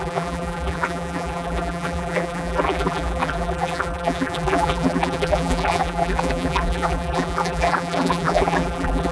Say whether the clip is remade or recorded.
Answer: remade